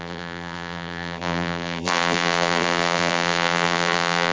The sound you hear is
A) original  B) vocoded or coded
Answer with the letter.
B